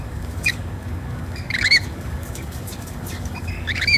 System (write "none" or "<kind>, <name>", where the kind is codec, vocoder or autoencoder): codec, DAC